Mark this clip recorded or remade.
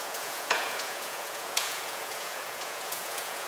remade